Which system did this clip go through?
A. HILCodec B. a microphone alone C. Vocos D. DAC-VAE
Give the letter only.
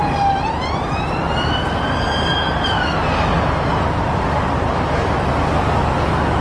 B